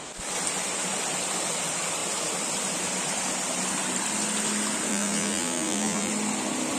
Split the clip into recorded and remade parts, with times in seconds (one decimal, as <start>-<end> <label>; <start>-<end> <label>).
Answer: 0.0-4.9 recorded; 4.9-6.1 remade; 6.1-6.8 recorded